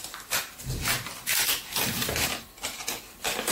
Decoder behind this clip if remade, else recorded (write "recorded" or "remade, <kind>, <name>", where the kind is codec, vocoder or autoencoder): recorded